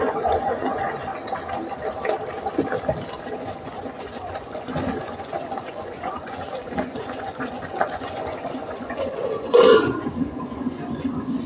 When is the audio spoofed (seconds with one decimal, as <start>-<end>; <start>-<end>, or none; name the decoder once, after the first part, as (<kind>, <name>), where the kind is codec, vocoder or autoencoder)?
0.0-1.1 (vocoder, Vocos); 3.2-11.5